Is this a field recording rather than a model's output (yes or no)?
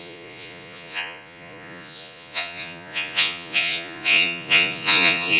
no